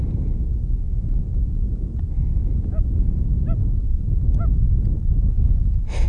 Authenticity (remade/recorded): recorded